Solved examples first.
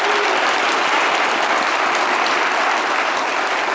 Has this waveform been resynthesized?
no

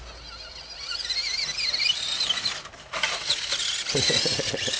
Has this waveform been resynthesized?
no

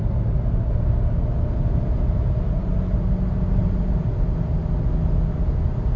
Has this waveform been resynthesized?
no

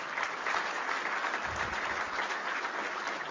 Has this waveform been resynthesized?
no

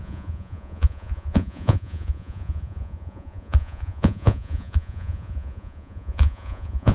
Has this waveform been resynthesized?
yes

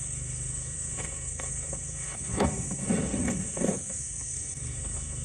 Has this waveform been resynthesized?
yes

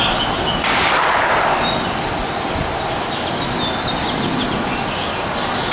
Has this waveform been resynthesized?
no